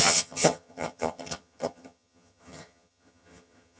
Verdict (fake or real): fake